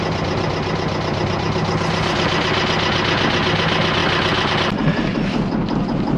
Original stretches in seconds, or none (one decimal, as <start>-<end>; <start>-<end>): 0.0-6.2